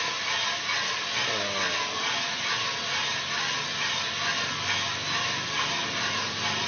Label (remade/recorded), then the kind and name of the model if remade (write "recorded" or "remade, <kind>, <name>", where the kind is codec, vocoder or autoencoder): recorded